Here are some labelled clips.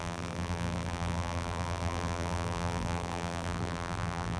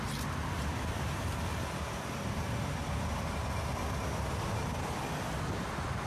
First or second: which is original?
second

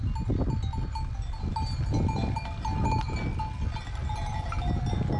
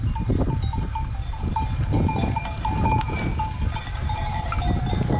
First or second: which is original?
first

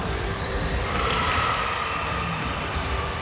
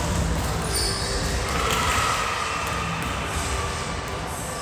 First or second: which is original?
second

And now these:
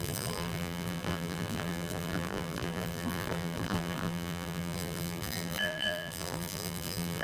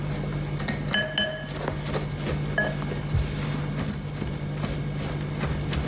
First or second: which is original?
second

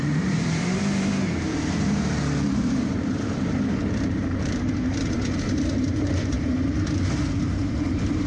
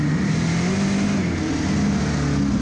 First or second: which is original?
second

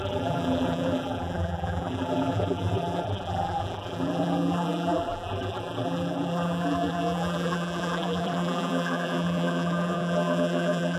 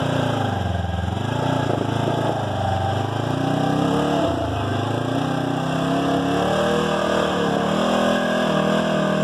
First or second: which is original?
second